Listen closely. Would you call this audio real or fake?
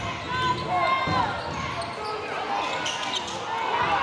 real